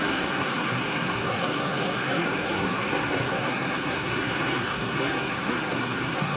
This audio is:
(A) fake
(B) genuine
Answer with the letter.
A